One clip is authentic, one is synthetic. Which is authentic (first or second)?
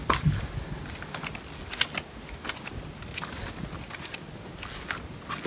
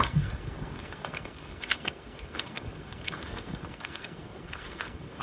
first